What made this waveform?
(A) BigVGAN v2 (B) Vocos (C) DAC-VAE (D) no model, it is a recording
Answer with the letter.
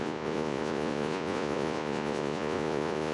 B